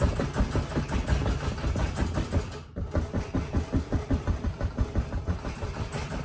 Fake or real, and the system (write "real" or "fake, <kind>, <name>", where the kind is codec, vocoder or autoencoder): real